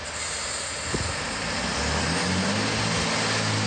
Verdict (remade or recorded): recorded